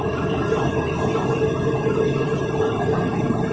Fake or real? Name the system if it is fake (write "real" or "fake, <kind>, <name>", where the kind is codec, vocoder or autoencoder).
real